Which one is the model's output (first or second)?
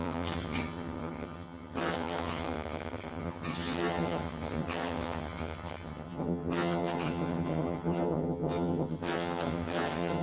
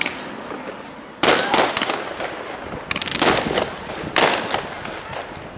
first